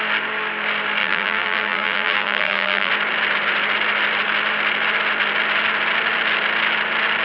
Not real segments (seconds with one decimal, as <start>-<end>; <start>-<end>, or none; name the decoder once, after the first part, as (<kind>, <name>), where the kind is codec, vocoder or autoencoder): 1.0-2.9 (vocoder, BigVGAN v2)